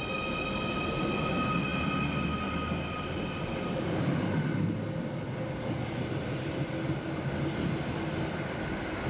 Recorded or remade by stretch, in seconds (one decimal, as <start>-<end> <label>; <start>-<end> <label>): 0.0-9.1 recorded